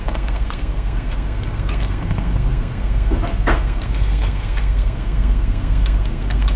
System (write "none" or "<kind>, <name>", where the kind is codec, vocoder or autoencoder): codec, SNAC